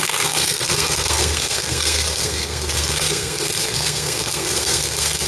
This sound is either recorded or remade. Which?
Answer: remade